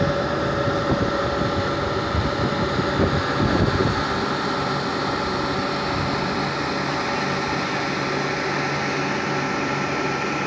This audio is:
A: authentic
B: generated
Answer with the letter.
A